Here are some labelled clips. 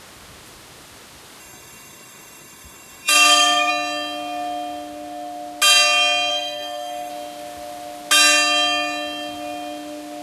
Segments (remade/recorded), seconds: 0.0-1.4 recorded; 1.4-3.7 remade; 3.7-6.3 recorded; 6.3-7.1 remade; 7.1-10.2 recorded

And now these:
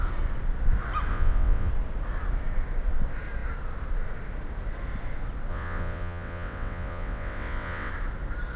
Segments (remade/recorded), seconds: 0.0-1.1 recorded; 1.1-1.7 remade; 1.7-5.5 recorded; 5.5-7.9 remade; 7.9-8.6 recorded

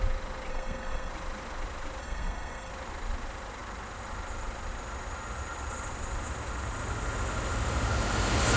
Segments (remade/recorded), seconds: 0.0-0.5 recorded; 0.5-1.1 remade; 1.1-2.0 recorded; 2.0-2.7 remade; 2.7-8.6 recorded